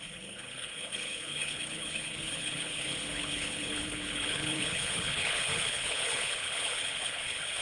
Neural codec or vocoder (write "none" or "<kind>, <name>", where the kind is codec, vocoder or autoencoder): codec, HILCodec